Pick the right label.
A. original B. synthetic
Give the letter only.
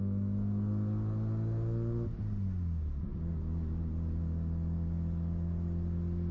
A